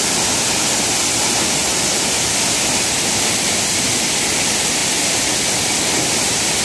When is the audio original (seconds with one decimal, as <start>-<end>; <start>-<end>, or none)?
0.0-6.6

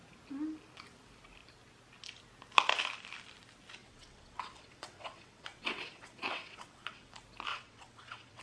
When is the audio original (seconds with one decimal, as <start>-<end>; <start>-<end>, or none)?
0.0-3.8; 7.1-7.5

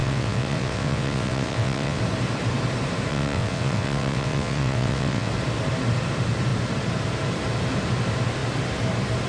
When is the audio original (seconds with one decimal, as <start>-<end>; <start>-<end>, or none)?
2.0-3.1; 5.3-9.3

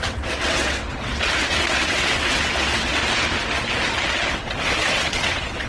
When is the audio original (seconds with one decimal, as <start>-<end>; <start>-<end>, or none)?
3.0-4.3

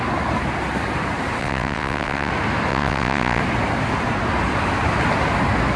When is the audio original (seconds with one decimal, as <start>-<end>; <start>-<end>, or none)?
0.0-1.4; 2.3-2.7; 3.4-5.8

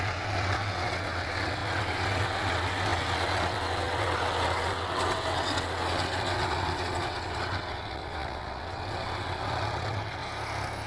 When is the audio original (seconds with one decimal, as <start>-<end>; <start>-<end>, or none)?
10.2-10.9

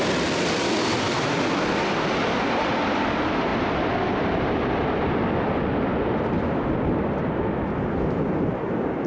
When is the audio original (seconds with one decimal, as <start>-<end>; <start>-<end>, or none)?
0.0-9.1